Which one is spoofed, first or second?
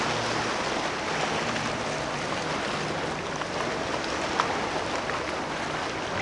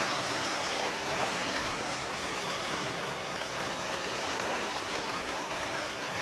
second